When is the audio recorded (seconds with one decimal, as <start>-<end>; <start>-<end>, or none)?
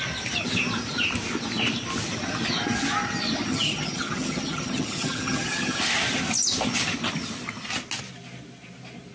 0.0-3.5; 5.8-9.1